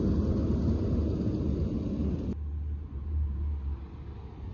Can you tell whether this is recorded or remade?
recorded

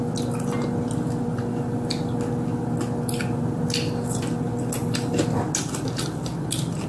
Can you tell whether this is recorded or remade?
recorded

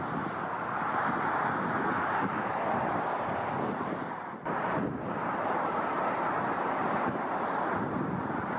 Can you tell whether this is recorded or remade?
recorded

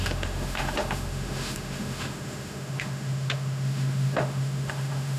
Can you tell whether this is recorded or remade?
remade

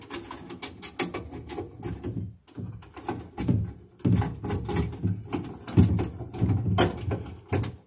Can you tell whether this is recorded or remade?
recorded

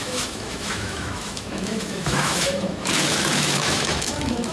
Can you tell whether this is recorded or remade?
remade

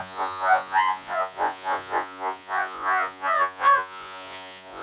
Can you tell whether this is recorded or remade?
remade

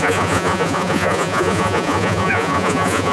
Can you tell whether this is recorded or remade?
remade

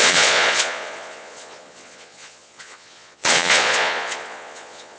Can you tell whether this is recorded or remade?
remade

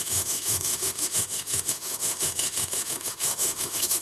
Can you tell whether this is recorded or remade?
remade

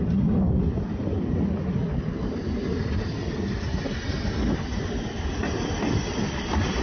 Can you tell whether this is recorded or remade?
recorded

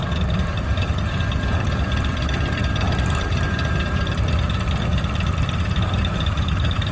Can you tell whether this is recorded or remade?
remade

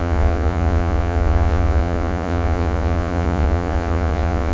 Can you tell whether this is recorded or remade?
remade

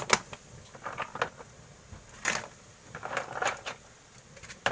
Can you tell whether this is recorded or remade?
recorded